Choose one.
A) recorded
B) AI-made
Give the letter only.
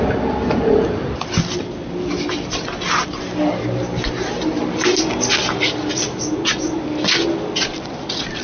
A